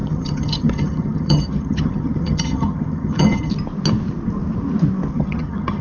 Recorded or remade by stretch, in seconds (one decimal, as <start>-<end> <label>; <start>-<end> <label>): 0.0-3.5 remade; 3.5-5.1 recorded; 5.1-5.8 remade